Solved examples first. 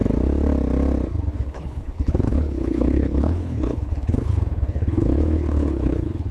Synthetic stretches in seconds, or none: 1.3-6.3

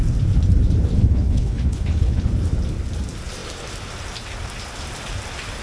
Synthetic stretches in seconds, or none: 1.0-2.3

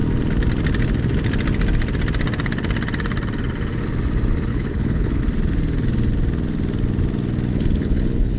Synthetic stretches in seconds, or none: 4.5-5.2; 7.5-8.4

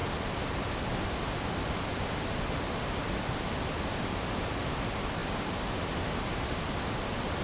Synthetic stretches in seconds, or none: none

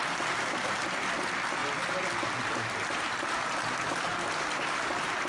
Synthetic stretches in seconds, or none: none

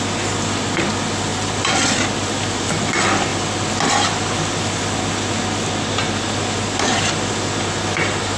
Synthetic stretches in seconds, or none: none